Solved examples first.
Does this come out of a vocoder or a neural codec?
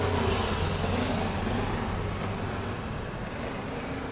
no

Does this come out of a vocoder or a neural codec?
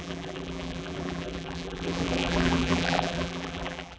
yes